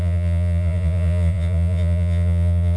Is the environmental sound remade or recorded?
remade